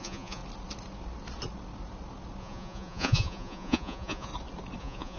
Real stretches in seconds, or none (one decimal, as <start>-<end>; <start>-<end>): 0.4-2.4; 4.3-4.8

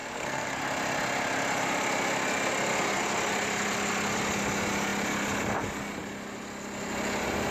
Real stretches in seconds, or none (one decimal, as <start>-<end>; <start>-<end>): 0.6-7.5

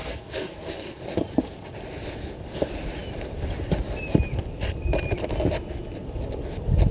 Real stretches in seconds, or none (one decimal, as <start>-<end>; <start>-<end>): 1.0-6.9

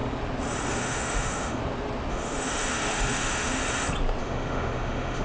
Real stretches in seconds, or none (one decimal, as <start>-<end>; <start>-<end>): 0.0-0.7; 1.6-2.1; 3.6-4.2

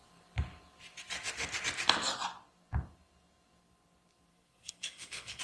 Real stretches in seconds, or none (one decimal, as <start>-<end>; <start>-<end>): 0.0-4.3

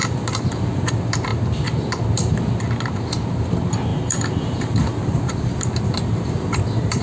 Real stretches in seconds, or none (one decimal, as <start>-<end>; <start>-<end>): 0.0-3.9; 5.2-7.0